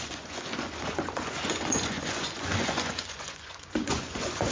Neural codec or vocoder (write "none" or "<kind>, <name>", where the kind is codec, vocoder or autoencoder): vocoder, Vocos